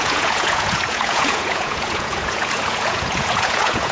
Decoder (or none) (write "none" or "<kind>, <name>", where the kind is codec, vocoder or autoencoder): vocoder, Vocos